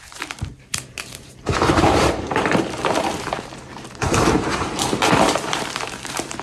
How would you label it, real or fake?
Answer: fake